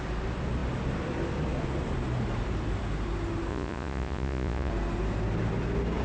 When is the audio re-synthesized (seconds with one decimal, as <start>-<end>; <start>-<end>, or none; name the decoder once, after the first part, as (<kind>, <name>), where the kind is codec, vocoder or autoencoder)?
3.5-4.7 (vocoder, Vocos)